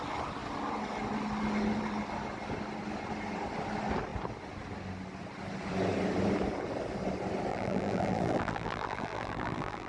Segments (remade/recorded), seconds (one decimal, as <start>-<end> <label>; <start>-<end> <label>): 0.0-7.5 recorded; 7.5-9.9 remade